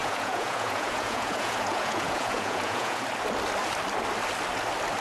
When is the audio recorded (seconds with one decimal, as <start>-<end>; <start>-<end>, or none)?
3.0-5.0